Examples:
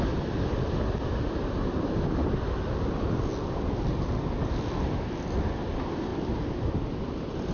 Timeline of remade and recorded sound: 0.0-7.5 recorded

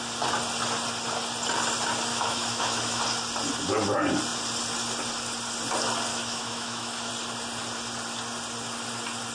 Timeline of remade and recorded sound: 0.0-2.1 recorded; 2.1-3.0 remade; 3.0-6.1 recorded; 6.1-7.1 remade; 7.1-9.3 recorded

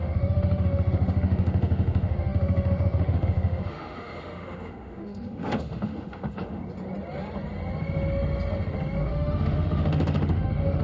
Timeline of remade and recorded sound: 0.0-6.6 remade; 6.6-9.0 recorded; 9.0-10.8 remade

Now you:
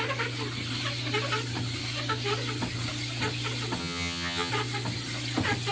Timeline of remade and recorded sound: 0.0-3.8 recorded; 3.8-4.5 remade; 4.5-5.7 recorded

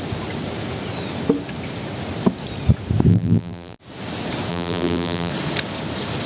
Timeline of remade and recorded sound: 0.0-3.1 recorded; 3.1-3.8 remade; 3.8-4.5 recorded; 4.5-5.3 remade; 5.3-6.3 recorded